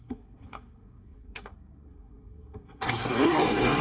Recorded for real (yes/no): no